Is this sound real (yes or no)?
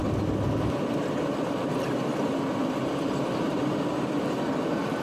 no